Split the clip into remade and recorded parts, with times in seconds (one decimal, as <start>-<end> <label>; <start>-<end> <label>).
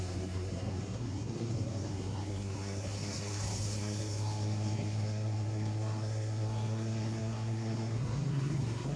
0.0-9.0 remade